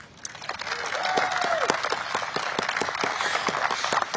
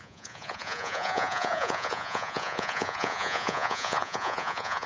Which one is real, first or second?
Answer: first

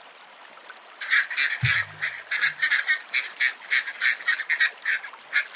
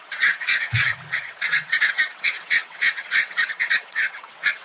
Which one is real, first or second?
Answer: first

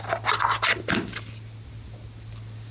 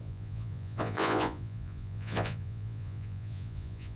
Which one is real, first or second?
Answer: first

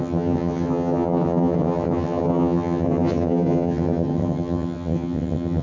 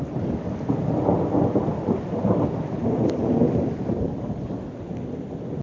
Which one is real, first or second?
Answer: second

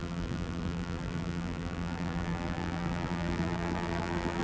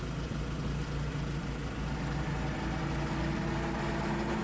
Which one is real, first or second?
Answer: second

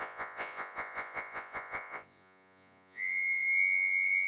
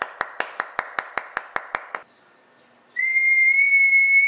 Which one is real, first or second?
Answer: second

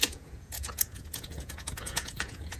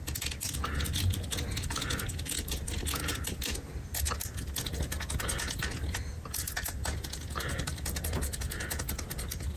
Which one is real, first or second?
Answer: second